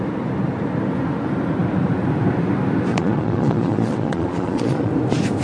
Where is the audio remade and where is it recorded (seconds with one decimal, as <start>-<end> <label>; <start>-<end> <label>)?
0.0-2.9 recorded; 2.9-4.9 remade; 4.9-5.4 recorded